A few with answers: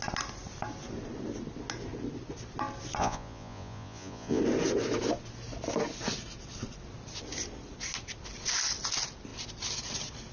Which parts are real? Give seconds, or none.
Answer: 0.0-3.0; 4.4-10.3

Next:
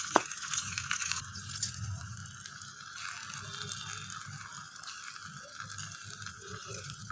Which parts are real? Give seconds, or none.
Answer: 2.2-6.3

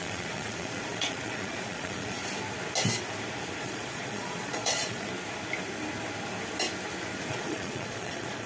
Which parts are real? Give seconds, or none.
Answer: 2.2-3.6; 5.1-7.3

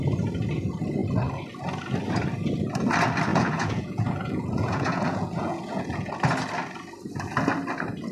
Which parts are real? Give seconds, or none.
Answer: 0.0-3.3; 6.1-8.1